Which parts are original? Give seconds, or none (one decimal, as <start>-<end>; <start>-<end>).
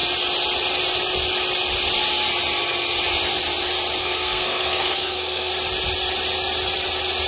0.0-4.0; 5.5-7.3